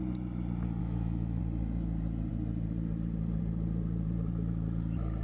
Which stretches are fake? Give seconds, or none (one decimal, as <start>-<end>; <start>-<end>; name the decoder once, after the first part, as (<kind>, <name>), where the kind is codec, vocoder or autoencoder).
0.8-1.4 (autoencoder, DAC-VAE)